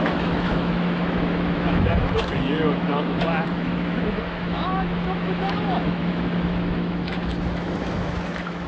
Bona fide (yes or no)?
no